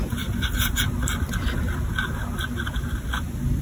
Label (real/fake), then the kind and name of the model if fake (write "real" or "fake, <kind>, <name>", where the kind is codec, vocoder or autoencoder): real